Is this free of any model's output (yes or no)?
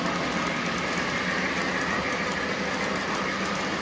yes